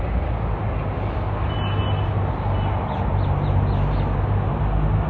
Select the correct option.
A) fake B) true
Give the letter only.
B